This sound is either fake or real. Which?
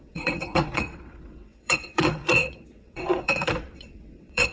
fake